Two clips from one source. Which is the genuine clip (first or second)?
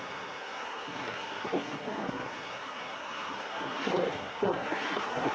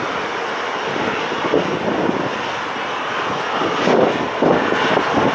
second